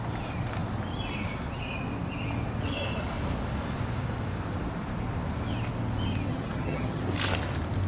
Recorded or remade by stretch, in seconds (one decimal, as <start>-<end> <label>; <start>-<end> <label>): 0.0-6.3 recorded; 6.3-7.0 remade; 7.0-7.9 recorded

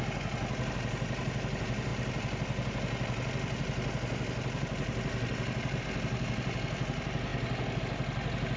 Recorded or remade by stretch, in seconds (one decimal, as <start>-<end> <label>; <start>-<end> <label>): 0.0-8.6 recorded

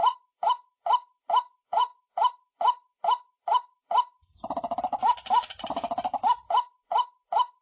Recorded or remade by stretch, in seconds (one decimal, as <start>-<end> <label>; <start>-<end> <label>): 0.0-7.6 recorded

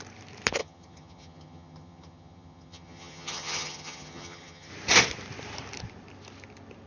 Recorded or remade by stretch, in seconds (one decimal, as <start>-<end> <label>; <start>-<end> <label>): 0.0-0.6 recorded; 0.6-4.7 remade; 4.7-6.9 recorded